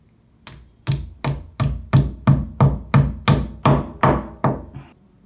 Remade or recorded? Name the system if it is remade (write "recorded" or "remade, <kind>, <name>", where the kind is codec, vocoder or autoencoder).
recorded